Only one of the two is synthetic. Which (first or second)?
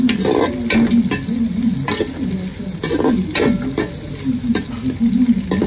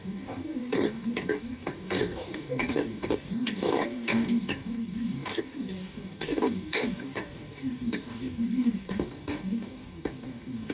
second